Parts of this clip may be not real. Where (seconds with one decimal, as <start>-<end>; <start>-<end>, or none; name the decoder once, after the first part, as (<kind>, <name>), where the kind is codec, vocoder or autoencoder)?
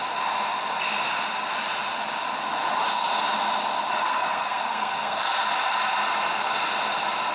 4.0-5.2 (codec, SNAC)